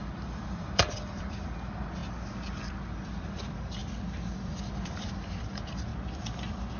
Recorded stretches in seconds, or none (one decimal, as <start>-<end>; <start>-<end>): 2.0-2.7; 3.8-4.5; 5.9-6.8